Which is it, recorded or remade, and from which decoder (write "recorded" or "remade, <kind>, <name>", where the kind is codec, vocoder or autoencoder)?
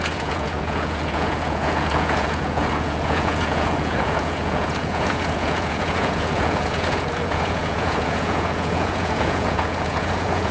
remade, vocoder, Vocos